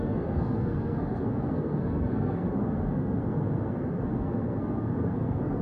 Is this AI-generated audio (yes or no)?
yes